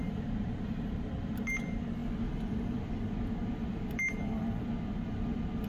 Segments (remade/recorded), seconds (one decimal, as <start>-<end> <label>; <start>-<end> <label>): 0.0-5.7 recorded